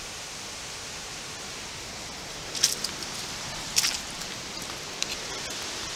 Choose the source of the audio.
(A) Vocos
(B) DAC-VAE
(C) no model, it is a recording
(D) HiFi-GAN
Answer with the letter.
C